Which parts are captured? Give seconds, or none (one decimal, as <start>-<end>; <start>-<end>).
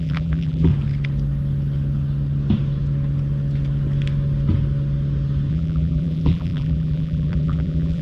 0.7-5.5